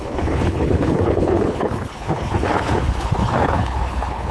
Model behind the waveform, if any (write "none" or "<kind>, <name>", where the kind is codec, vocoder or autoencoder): codec, HILCodec